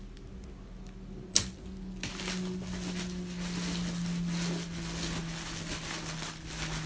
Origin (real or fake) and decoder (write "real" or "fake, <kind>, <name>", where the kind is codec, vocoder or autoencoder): real